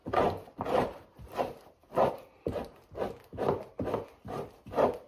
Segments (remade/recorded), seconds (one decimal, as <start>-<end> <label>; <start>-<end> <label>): 0.0-2.1 remade; 2.1-5.1 recorded